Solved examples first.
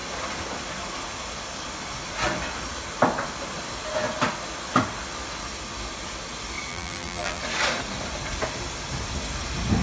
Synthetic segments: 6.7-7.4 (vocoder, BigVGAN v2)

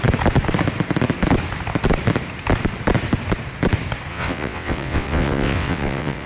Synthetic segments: 4.1-6.3 (vocoder, WaveNeXt)